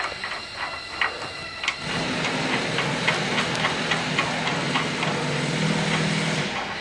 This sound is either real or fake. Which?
real